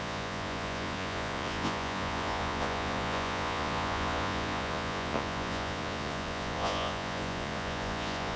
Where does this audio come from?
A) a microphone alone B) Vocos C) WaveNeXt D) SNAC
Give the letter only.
B